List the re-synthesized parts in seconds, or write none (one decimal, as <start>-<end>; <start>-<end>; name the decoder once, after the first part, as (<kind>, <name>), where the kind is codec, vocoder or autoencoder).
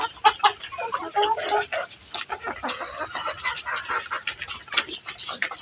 none